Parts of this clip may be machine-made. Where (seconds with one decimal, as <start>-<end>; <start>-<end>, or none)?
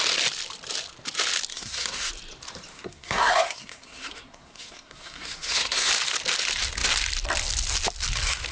1.5-2.1; 2.7-5.9